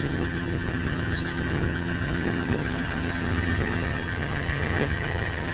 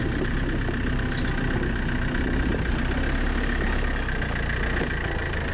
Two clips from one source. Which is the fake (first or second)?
first